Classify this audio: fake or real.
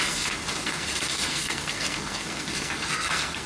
fake